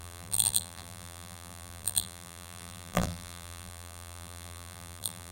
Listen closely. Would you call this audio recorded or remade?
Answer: remade